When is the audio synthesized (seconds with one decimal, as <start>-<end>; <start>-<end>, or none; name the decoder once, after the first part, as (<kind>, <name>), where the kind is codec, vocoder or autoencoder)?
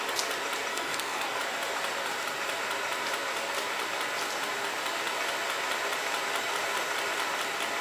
0.7-1.4 (codec, SNAC)